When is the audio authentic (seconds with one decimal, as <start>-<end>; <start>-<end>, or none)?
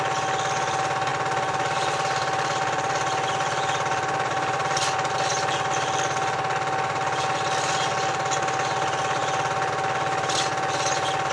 0.0-1.1; 5.1-11.3